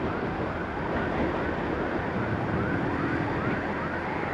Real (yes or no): yes